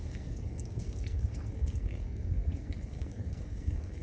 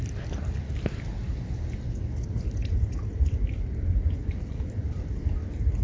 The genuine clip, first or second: second